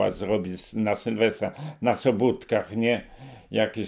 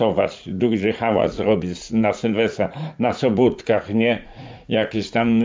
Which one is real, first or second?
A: first